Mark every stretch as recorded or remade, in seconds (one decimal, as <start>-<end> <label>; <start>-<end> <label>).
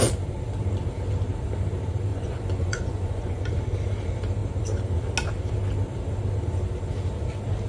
0.0-2.1 recorded; 2.1-3.5 remade; 3.5-7.7 recorded